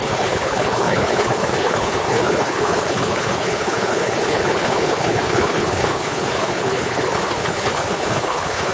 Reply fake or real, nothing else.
fake